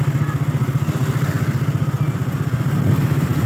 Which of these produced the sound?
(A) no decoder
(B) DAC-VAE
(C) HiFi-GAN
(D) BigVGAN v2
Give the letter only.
A